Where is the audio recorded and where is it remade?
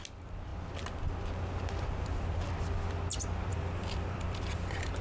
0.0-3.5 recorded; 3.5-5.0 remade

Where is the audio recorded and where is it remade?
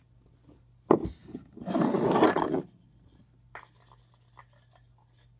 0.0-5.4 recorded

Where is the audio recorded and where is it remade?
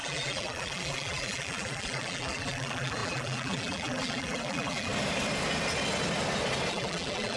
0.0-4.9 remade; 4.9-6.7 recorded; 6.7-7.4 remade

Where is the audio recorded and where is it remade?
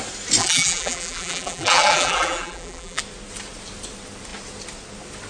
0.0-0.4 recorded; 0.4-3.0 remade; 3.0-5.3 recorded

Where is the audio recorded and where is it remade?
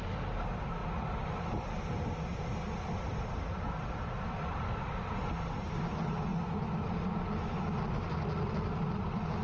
0.0-2.3 recorded; 2.3-5.1 remade; 5.1-6.3 recorded; 6.3-7.0 remade; 7.0-9.4 recorded